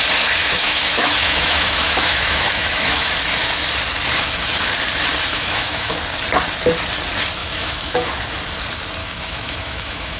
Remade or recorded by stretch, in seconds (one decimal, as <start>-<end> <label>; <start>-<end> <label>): 0.0-0.4 recorded; 0.4-3.1 remade; 3.1-5.3 recorded; 5.3-5.9 remade; 5.9-7.4 recorded; 7.4-8.2 remade; 8.2-9.0 recorded; 9.0-10.2 remade